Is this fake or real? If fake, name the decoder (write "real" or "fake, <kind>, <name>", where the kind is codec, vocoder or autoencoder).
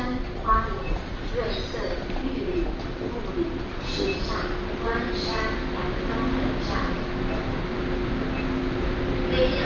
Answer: real